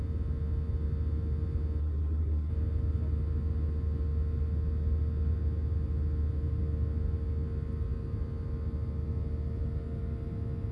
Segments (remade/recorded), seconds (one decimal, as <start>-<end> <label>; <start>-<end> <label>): 0.0-1.8 recorded; 1.8-2.5 remade; 2.5-10.7 recorded